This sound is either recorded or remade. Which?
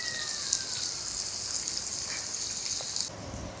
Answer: recorded